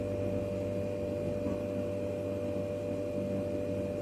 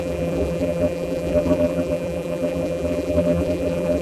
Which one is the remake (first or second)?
second